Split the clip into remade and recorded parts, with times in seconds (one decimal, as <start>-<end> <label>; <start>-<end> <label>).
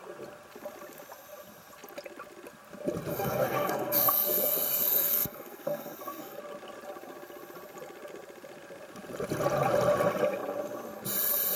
0.0-3.1 recorded; 3.1-6.4 remade; 6.4-11.6 recorded